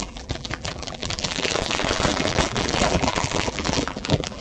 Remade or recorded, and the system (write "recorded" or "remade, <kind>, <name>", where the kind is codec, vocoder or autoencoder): remade, vocoder, BigVGAN v2